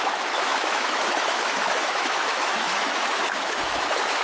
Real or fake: fake